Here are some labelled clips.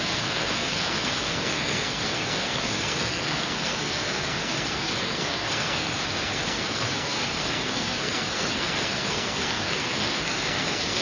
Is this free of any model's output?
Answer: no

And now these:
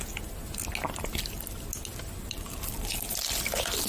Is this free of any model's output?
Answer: yes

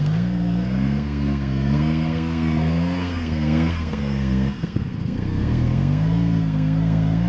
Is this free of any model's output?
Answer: no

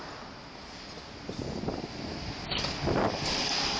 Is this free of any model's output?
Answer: yes